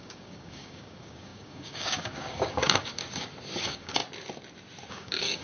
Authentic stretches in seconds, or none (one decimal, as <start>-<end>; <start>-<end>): 3.0-3.6; 4.0-4.9